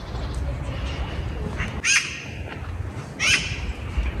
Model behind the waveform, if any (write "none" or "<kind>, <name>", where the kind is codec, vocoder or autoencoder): none